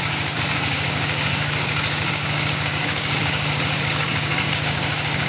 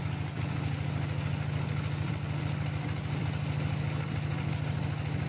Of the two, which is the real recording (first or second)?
second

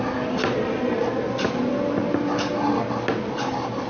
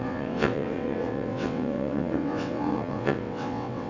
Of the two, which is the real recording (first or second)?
first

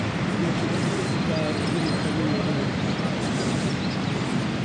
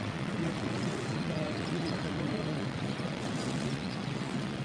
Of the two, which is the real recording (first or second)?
first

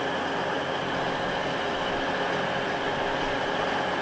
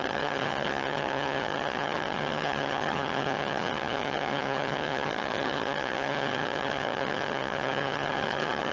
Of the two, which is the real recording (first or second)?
first